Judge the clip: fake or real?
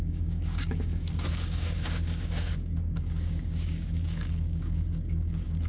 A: fake